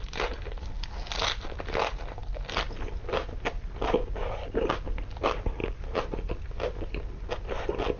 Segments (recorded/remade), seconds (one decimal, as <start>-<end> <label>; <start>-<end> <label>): 0.0-8.0 recorded